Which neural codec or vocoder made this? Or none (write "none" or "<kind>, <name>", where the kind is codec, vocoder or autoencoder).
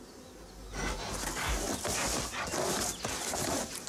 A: none